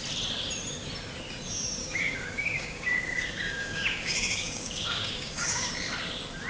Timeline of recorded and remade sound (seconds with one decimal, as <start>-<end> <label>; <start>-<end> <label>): 0.0-1.8 recorded; 1.8-5.7 remade; 5.7-6.5 recorded